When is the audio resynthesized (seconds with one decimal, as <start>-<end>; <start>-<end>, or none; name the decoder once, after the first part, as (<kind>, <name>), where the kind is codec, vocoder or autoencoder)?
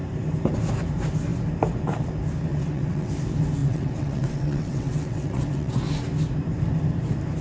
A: 2.5-3.1 (vocoder, WaveNeXt); 3.6-5.7